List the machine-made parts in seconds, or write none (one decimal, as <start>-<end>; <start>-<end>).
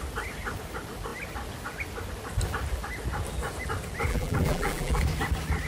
4.1-5.0